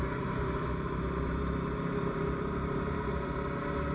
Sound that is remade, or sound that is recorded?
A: remade